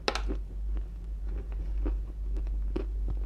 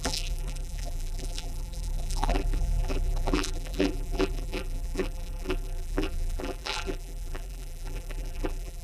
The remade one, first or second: second